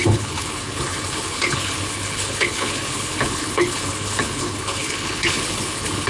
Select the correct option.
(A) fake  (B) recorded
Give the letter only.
A